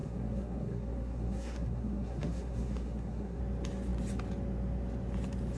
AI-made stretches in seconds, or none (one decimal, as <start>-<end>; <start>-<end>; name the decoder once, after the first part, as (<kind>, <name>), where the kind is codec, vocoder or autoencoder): 0.0-3.4 (codec, SNAC)